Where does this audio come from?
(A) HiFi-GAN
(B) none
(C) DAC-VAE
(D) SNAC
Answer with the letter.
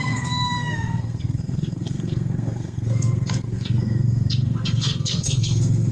D